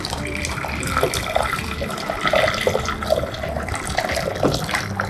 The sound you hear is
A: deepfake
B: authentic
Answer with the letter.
A